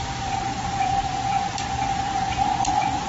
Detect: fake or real real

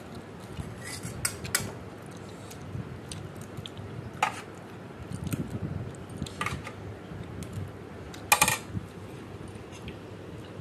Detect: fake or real real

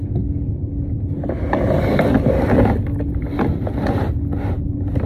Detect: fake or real real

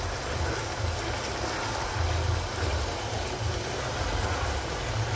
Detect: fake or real real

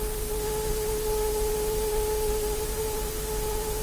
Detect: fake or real real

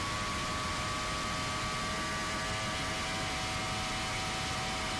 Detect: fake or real real